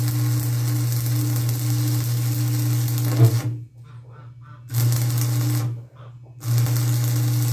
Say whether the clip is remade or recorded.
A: recorded